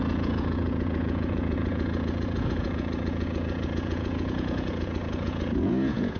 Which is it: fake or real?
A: fake